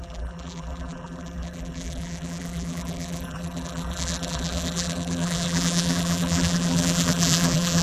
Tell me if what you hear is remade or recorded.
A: remade